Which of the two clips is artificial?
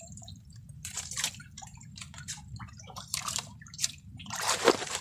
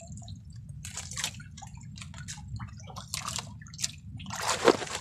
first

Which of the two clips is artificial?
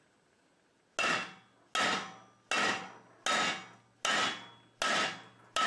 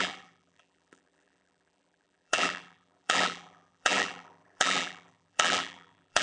second